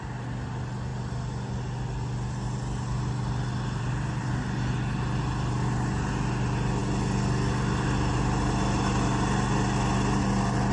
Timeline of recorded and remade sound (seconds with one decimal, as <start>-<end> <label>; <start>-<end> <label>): 0.0-10.7 recorded